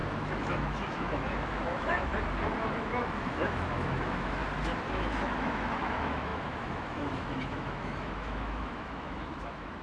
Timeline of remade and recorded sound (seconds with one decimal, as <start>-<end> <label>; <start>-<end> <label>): 0.0-2.1 remade; 2.1-2.7 recorded; 2.7-4.4 remade; 4.4-4.9 recorded; 4.9-9.8 remade